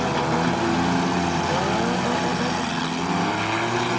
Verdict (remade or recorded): recorded